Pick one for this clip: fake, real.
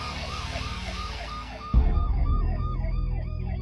fake